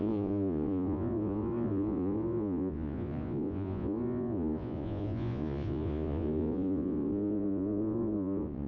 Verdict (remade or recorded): remade